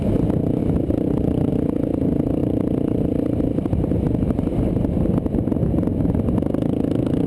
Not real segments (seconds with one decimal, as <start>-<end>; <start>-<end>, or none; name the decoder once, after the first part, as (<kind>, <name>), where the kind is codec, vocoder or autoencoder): 0.6-1.5 (vocoder, BigVGAN v2); 2.4-4.7